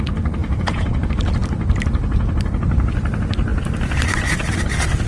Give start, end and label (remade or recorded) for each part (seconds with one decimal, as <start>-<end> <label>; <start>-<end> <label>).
0.0-0.4 recorded; 0.4-1.1 remade; 1.1-5.1 recorded